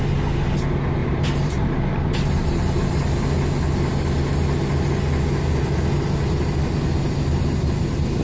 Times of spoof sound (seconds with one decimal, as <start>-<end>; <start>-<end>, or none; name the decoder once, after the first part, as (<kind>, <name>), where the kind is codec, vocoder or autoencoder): 1.0-3.4 (vocoder, BigVGAN v2)

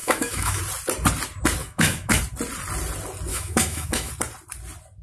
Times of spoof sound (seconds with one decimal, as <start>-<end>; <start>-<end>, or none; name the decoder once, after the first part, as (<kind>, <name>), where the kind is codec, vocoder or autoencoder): 0.0-0.6 (autoencoder, DAC-VAE); 1.6-2.2; 3.3-4.1

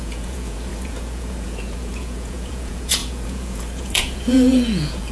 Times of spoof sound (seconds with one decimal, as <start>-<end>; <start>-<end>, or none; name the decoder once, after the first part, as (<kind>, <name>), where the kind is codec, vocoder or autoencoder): 0.0-5.1 (vocoder, Vocos)